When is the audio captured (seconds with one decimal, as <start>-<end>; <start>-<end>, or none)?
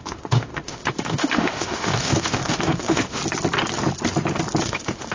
3.2-4.6